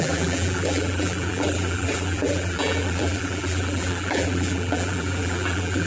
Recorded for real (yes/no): no